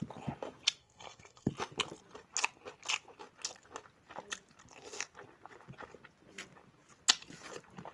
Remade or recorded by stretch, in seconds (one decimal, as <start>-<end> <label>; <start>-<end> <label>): 0.0-0.8 recorded; 0.8-1.5 remade; 1.5-7.9 recorded